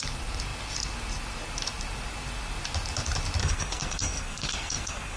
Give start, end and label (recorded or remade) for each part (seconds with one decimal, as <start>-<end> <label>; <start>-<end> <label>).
0.0-3.4 recorded; 3.4-5.2 remade